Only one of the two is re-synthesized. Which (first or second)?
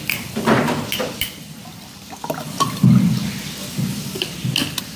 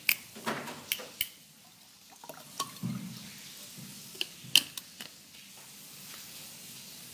first